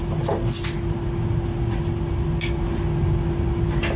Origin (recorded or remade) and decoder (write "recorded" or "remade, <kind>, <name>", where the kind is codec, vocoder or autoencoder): remade, vocoder, BigVGAN v2